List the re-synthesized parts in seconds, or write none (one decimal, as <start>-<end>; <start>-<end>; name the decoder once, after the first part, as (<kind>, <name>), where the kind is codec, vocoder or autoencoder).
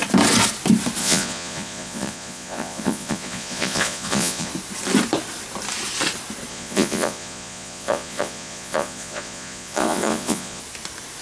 1.0-4.5 (vocoder, Vocos); 6.5-10.6